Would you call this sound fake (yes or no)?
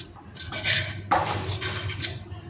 no